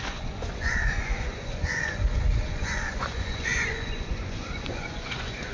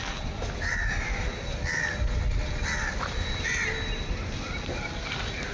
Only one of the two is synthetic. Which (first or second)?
first